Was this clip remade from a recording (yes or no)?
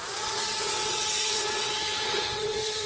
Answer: yes